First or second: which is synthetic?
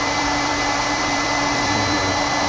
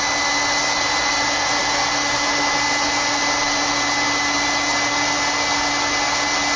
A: first